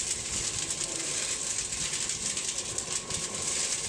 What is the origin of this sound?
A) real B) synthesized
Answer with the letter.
A